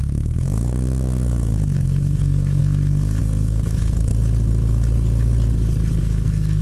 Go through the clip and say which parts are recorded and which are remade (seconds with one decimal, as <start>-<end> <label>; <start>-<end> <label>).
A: 0.0-4.1 remade; 4.1-6.0 recorded; 6.0-6.6 remade